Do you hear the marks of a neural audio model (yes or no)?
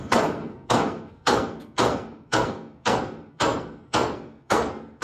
yes